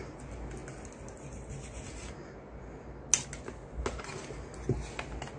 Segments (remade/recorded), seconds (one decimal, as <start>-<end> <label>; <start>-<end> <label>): 0.0-5.4 recorded